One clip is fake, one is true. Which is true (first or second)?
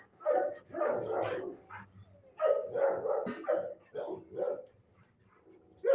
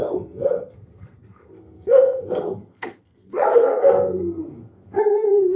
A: first